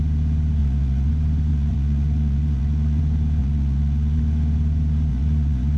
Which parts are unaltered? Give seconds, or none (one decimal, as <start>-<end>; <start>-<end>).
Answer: 0.0-0.6; 1.1-1.5; 3.0-3.4; 4.2-5.1